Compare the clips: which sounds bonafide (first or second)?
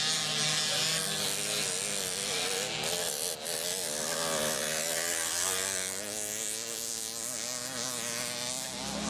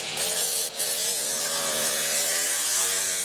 first